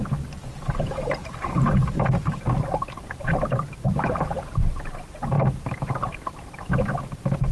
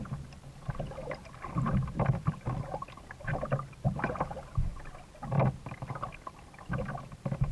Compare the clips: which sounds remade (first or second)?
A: first